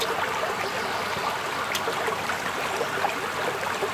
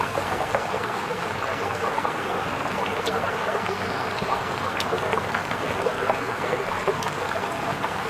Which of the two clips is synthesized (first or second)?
second